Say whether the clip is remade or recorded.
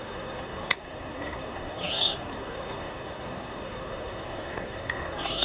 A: remade